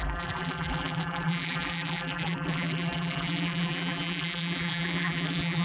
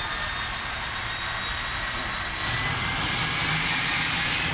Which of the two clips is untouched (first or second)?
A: second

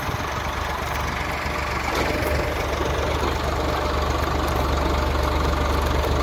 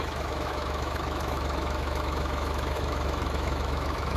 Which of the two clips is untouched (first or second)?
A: first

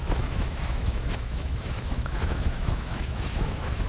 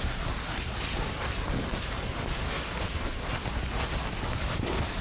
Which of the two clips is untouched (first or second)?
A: second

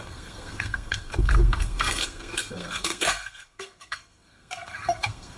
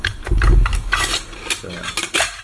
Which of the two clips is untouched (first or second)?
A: second